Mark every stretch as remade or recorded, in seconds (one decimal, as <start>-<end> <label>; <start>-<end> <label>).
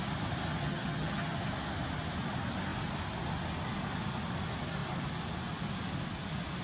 0.0-0.5 recorded; 0.5-1.5 remade; 1.5-6.6 recorded